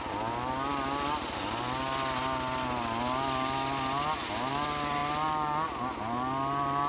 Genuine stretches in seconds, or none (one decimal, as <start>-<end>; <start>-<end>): 0.0-6.9